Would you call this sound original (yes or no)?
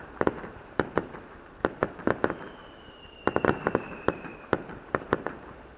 no